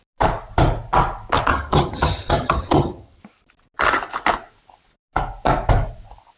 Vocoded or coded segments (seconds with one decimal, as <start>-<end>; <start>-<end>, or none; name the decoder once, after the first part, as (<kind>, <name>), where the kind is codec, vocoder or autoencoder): 1.5-3.2 (vocoder, HiFi-GAN)